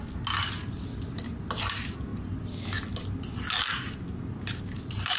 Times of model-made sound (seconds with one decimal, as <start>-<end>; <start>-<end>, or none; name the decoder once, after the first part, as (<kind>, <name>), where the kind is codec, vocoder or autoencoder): none